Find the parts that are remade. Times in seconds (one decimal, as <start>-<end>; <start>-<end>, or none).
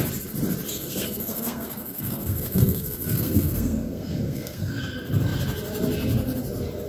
0.7-4.8